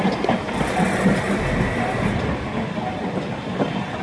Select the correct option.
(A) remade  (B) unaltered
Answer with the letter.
B